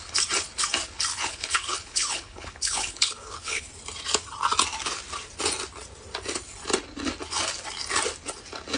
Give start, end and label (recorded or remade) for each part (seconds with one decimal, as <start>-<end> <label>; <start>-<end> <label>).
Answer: 0.0-1.1 recorded; 1.1-3.7 remade; 3.7-8.8 recorded